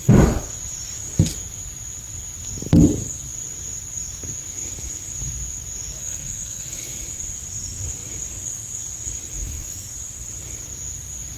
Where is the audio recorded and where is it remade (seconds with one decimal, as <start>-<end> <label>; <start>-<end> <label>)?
0.0-6.0 recorded; 6.0-6.8 remade; 6.8-11.4 recorded